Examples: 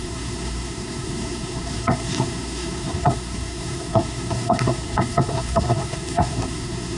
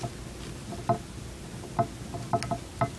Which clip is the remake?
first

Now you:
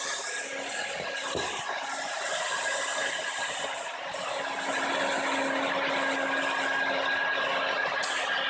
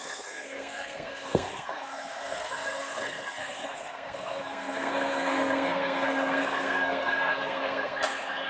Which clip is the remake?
second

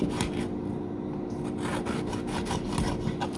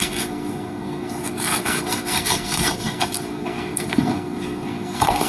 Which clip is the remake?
second